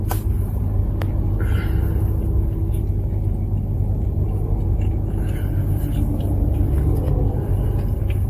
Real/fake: real